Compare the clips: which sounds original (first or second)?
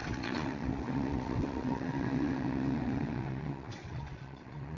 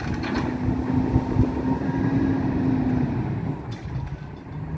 second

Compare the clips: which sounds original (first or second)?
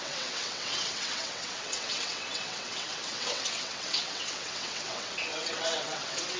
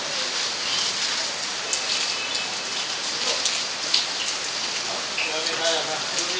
second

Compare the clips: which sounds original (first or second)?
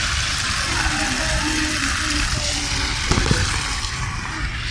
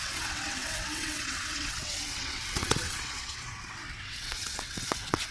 first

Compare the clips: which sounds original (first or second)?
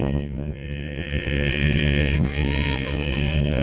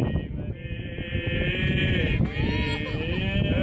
second